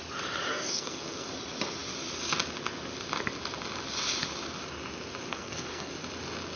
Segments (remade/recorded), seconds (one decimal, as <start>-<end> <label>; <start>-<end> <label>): 0.0-0.5 recorded; 0.5-1.3 remade; 1.3-5.3 recorded; 5.3-5.9 remade; 5.9-6.6 recorded